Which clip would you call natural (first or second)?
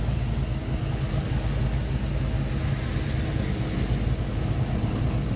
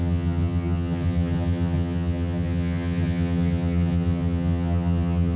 first